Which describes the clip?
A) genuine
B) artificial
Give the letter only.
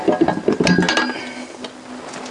A